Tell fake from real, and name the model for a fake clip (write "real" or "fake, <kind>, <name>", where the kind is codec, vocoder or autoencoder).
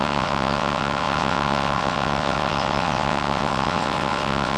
fake, vocoder, WaveNeXt